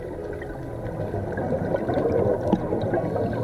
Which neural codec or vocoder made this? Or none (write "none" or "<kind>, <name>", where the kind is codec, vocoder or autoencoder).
none